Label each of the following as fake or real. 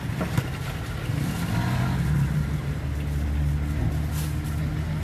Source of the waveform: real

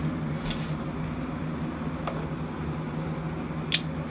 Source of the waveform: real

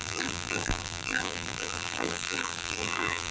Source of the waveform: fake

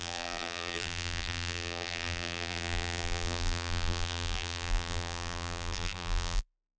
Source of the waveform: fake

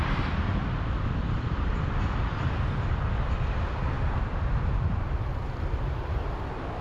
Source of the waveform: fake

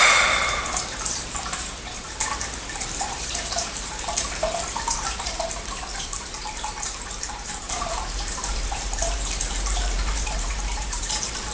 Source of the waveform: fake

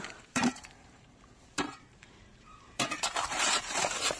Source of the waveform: fake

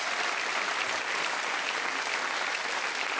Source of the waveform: fake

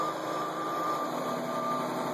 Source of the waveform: fake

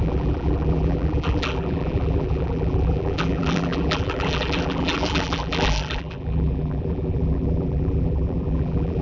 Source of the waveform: fake